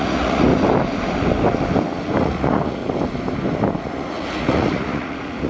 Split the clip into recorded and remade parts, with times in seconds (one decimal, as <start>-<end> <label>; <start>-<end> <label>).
0.0-0.5 remade; 0.5-2.2 recorded; 2.2-2.8 remade; 2.8-3.8 recorded; 3.8-5.5 remade